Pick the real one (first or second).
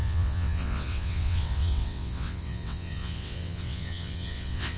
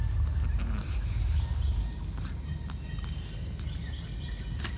second